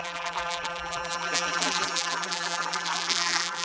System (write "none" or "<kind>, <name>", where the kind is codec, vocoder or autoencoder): vocoder, BigVGAN v2